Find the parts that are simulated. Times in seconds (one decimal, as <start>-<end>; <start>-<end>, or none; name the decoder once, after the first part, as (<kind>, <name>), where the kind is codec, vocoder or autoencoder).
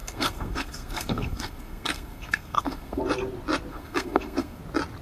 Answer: 0.0-3.0 (codec, SNAC); 3.7-4.6